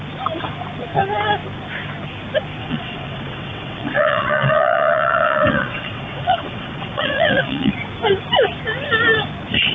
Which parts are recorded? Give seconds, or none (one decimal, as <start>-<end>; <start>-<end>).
0.0-2.6; 7.7-9.7